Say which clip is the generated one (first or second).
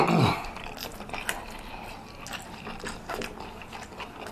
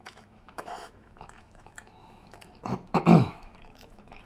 second